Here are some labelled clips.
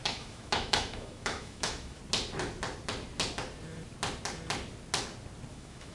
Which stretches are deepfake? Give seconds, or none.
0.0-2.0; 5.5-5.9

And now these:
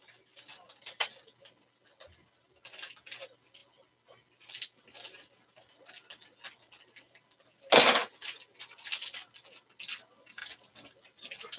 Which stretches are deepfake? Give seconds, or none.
10.4-11.6

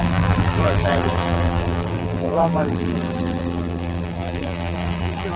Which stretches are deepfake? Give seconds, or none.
0.0-5.4

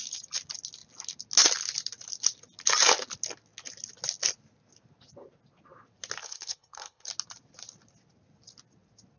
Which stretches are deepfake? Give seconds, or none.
6.2-7.1

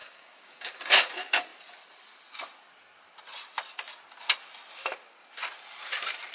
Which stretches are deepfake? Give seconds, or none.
0.0-1.1

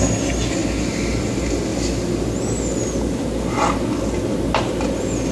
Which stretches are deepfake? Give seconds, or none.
0.0-0.6; 1.2-1.7; 3.2-5.3

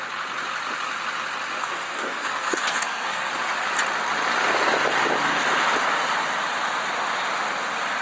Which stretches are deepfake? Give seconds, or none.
1.6-3.3